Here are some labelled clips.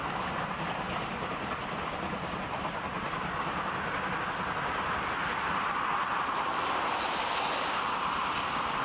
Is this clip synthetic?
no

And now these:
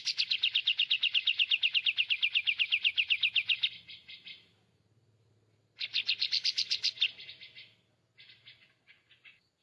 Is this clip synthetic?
no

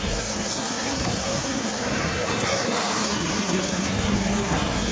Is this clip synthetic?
yes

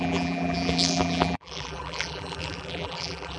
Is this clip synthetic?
yes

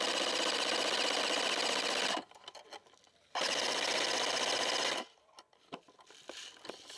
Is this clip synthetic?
no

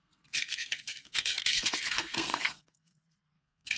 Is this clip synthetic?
yes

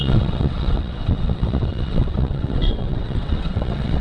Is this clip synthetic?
yes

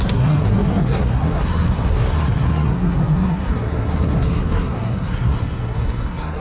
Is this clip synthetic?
yes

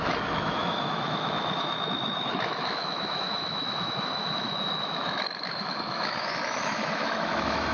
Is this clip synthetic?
yes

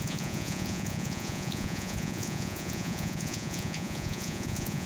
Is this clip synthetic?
yes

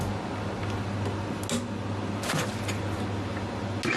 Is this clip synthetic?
no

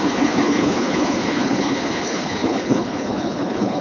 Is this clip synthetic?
yes